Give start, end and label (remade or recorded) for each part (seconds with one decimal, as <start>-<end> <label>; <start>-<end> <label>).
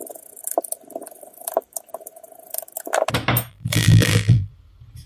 0.0-3.5 recorded; 3.5-4.5 remade; 4.5-5.1 recorded